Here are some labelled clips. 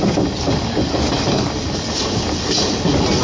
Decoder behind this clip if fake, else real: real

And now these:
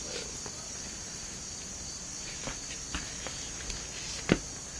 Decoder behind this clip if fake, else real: real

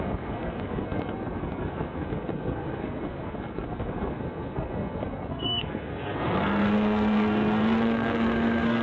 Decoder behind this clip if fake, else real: fake, codec, SNAC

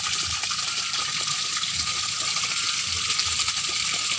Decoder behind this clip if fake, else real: real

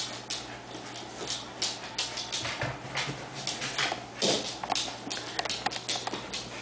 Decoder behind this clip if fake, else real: real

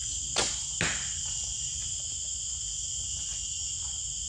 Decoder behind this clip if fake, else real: real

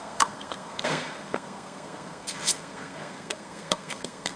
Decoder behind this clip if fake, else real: fake, codec, SNAC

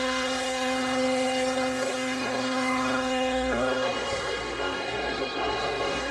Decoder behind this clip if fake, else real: fake, codec, SNAC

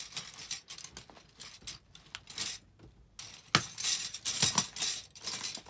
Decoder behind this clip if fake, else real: real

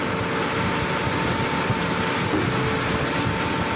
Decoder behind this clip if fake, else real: real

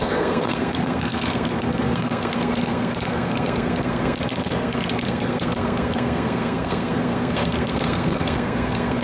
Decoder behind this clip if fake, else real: fake, codec, SNAC